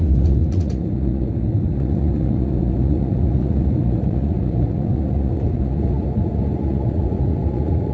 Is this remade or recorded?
remade